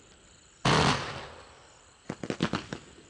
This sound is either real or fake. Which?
real